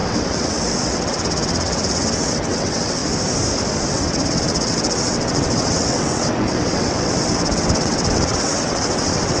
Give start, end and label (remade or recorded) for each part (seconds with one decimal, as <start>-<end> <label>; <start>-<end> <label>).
0.0-3.0 remade; 3.0-3.9 recorded; 3.9-9.4 remade